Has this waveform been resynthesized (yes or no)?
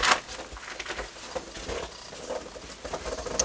no